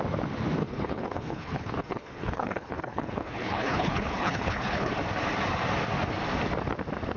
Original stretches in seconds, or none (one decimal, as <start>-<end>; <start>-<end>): 0.0-0.6; 4.9-7.2